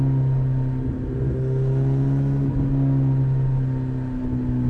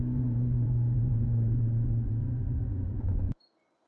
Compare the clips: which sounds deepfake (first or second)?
second